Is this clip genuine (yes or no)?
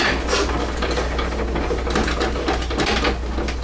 yes